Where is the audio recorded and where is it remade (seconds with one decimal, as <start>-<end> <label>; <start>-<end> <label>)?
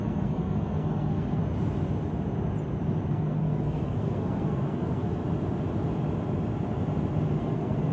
0.0-1.4 remade; 1.4-3.1 recorded; 3.1-5.2 remade; 5.2-7.4 recorded; 7.4-7.9 remade